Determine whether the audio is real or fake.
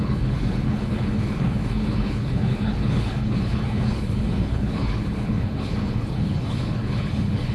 fake